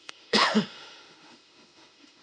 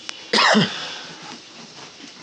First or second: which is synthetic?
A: first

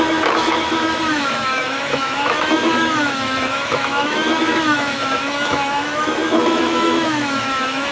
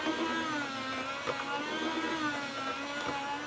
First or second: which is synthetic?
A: first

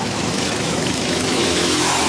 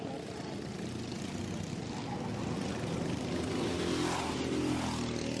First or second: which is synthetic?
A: first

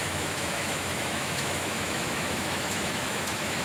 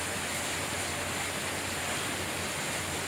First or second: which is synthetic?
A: first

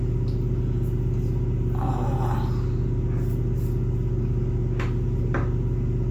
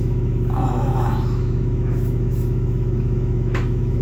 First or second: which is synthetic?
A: second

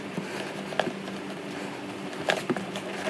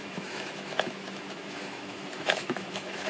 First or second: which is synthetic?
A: second